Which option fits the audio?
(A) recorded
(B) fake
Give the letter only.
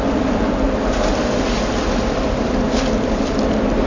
A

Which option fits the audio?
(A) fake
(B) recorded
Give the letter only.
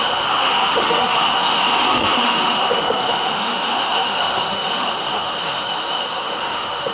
A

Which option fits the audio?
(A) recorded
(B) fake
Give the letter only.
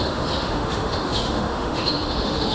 B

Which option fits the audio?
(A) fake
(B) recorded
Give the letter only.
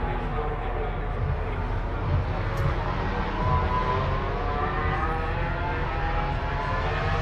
B